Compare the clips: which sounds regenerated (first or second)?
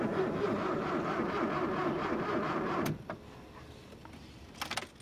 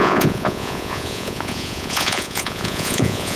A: second